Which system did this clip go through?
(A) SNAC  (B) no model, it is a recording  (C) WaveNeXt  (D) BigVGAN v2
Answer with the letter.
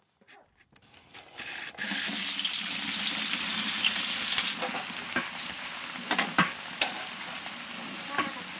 B